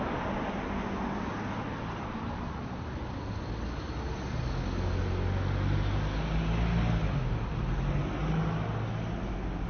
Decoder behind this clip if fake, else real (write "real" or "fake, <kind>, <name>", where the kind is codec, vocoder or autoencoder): real